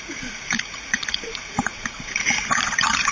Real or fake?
fake